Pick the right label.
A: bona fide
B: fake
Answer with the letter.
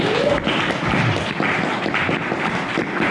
A